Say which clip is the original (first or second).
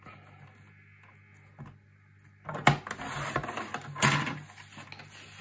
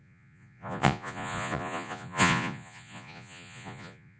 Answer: first